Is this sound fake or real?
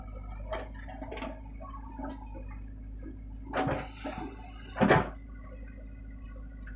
real